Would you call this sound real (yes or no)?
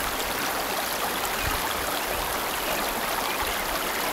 yes